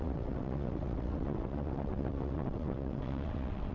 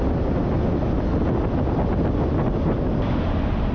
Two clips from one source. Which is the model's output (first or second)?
first